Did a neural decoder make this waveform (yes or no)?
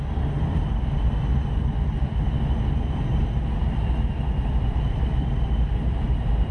no